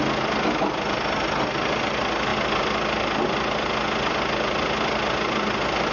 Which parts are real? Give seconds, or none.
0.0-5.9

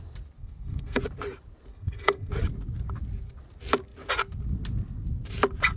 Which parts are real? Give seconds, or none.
0.0-0.4; 1.0-1.7; 2.3-5.8

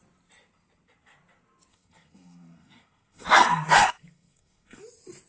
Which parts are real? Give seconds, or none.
0.0-1.7; 4.8-5.3

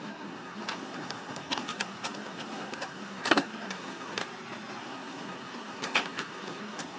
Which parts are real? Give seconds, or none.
4.2-4.8

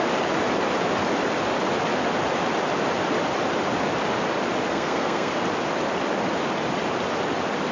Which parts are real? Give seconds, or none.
0.0-4.7; 5.3-7.7